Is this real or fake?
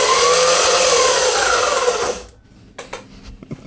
real